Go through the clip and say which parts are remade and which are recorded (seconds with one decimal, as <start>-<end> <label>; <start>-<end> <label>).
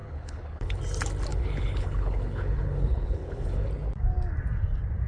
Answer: 0.0-0.8 remade; 0.8-1.3 recorded; 1.3-3.7 remade; 3.7-5.1 recorded